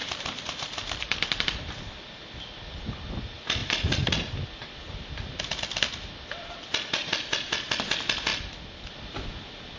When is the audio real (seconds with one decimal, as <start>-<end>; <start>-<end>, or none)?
1.7-9.8